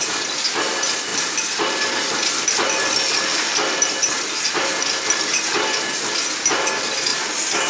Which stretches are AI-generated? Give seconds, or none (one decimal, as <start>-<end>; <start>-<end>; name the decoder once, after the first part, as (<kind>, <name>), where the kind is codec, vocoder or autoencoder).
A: none